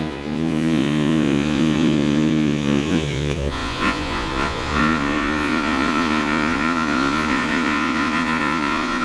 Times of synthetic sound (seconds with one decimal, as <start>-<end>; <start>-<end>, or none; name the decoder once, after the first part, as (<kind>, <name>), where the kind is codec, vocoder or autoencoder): 0.0-9.0 (vocoder, Vocos)